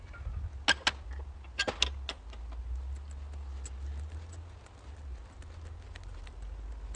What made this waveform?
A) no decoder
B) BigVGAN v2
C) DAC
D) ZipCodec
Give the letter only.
A